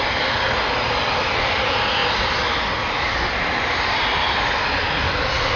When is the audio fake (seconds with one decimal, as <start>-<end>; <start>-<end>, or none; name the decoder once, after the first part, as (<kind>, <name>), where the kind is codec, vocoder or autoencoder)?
none